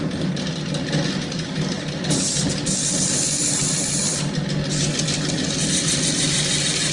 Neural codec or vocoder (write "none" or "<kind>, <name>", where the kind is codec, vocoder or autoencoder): none